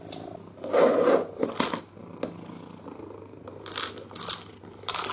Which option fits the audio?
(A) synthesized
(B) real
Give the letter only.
B